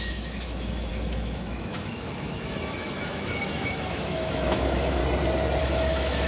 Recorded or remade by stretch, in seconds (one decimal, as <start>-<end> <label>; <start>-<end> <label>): 0.0-5.0 remade; 5.0-5.6 recorded; 5.6-6.3 remade